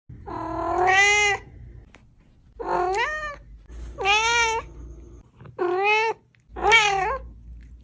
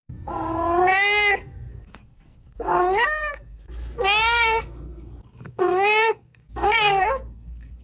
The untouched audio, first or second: first